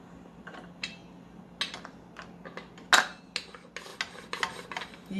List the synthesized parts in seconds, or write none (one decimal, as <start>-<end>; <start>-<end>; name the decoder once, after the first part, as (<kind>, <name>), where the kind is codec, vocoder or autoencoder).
none